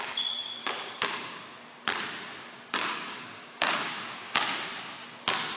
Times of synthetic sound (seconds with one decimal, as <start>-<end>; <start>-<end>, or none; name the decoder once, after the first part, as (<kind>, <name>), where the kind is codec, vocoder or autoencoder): 0.6-1.3 (codec, DAC); 2.8-4.7